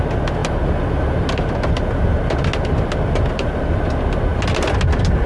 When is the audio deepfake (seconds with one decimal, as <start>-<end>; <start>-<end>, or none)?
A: none